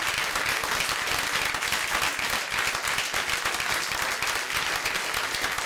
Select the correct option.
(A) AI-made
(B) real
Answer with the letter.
B